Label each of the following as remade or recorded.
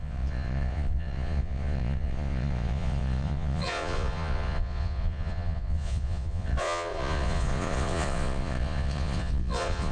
remade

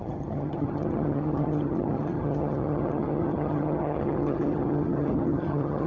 remade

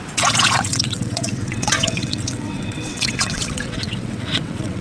remade